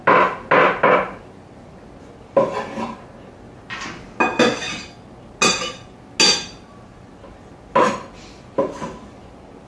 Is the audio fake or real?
real